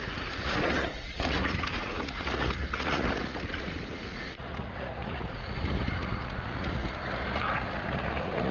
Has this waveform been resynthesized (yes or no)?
yes